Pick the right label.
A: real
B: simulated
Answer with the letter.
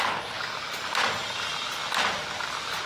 A